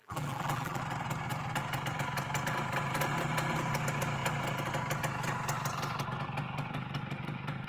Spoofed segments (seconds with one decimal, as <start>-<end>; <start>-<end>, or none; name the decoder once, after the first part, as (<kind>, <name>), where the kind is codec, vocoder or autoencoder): 0.0-0.8 (vocoder, BigVGAN v2)